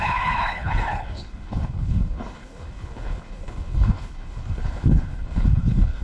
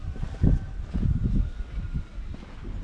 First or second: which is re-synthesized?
first